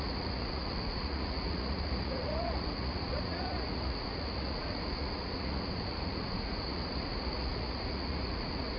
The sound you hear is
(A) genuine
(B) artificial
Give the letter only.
B